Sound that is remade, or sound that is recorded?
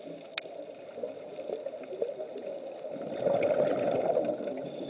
recorded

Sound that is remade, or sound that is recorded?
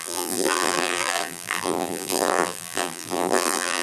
remade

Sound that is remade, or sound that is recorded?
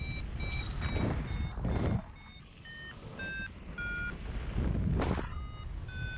recorded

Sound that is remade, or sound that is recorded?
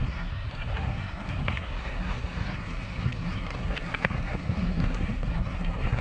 remade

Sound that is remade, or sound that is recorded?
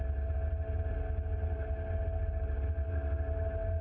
recorded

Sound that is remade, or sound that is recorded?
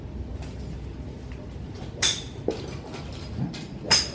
recorded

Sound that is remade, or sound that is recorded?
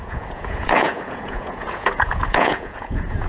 remade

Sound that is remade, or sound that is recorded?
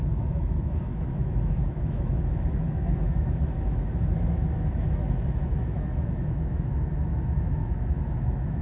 remade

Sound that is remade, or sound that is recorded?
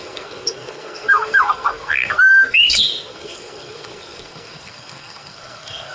remade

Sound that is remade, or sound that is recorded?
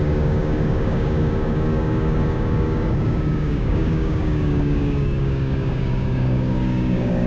remade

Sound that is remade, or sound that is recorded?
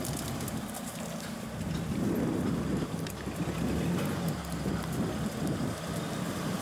recorded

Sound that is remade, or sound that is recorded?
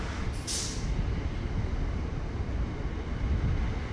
recorded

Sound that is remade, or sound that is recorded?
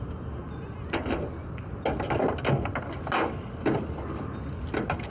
recorded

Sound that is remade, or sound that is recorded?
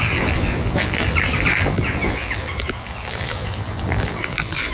remade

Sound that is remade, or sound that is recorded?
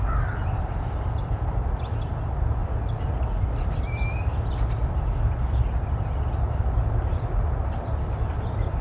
recorded